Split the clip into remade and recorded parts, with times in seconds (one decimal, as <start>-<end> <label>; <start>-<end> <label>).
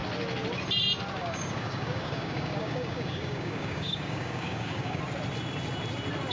0.0-1.2 recorded; 1.2-5.0 remade; 5.0-6.3 recorded